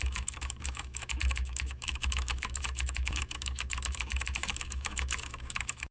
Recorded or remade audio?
remade